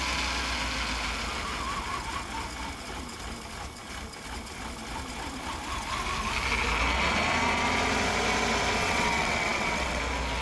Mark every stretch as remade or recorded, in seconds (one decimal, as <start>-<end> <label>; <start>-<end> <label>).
0.0-8.8 recorded; 8.8-10.0 remade; 10.0-10.4 recorded

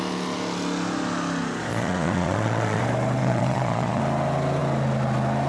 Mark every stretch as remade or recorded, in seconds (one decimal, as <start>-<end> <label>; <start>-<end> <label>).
0.0-1.7 recorded; 1.7-2.8 remade; 2.8-3.2 recorded; 3.2-4.0 remade; 4.0-5.5 recorded